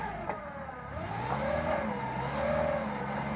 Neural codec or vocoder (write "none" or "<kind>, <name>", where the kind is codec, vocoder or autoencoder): none